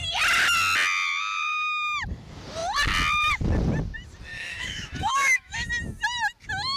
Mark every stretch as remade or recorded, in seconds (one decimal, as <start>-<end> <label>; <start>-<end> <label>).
0.0-4.3 recorded; 4.3-5.7 remade; 5.7-6.8 recorded